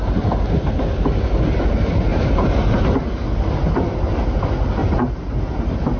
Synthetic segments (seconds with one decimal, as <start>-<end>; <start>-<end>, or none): 2.1-2.8; 4.8-5.4